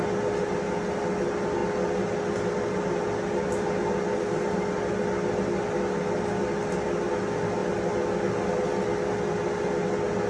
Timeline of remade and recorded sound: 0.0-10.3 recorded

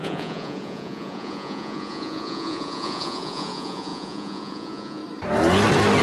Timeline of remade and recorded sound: 0.0-5.0 remade; 5.0-6.0 recorded

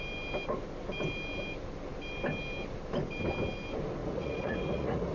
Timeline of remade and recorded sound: 0.0-4.0 recorded; 4.0-5.1 remade

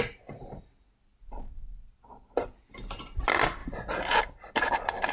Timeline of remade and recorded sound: 0.0-5.1 recorded